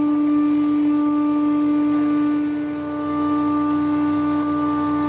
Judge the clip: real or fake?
real